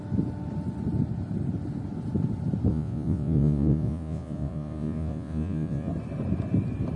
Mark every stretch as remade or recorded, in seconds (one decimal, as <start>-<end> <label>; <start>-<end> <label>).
0.0-2.7 recorded; 2.7-5.9 remade; 5.9-7.0 recorded